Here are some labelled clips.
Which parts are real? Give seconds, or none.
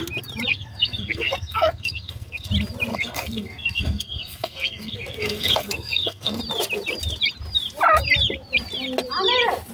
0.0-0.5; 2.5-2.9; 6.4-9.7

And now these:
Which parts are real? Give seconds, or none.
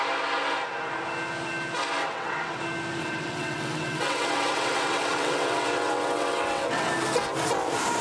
0.0-2.0; 2.6-3.0; 6.9-8.0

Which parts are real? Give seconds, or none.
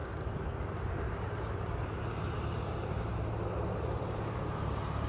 3.1-3.8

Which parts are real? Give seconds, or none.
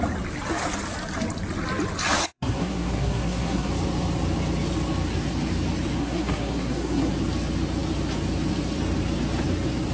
0.0-2.2; 3.7-6.0; 7.1-9.9